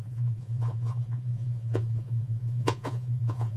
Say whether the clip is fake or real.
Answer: fake